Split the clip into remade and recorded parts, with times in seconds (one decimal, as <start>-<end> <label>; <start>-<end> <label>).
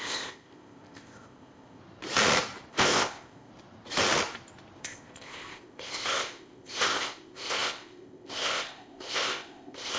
0.0-1.8 remade; 1.8-2.7 recorded; 2.7-3.5 remade; 3.5-4.8 recorded; 4.8-10.0 remade